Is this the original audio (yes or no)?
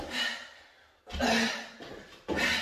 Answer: yes